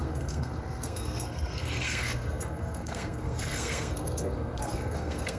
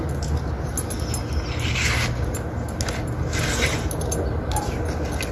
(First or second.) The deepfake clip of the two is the first